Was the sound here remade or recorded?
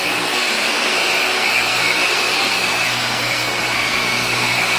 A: remade